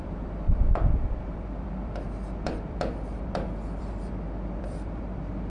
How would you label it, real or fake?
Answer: fake